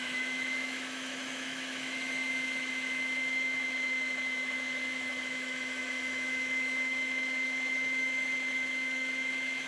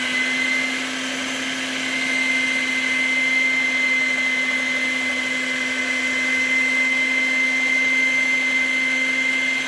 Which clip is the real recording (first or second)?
second